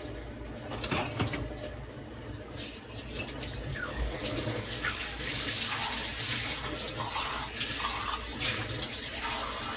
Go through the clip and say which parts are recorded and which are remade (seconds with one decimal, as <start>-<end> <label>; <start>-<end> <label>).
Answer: 0.0-3.7 recorded; 3.7-5.8 remade; 5.8-9.8 recorded